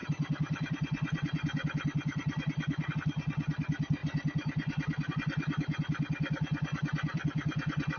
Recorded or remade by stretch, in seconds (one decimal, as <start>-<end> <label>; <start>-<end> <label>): 0.0-2.9 remade; 2.9-4.0 recorded; 4.0-5.1 remade; 5.1-7.1 recorded; 7.1-8.0 remade